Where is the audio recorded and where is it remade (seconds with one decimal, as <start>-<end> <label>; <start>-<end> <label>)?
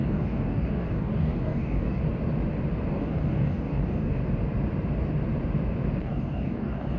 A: 0.0-2.0 remade; 2.0-2.9 recorded; 2.9-4.2 remade; 4.2-6.0 recorded; 6.0-7.0 remade